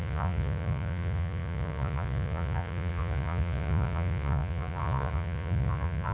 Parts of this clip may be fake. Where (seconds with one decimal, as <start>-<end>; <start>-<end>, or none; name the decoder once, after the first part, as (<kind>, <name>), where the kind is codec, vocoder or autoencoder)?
0.0-6.1 (vocoder, Vocos)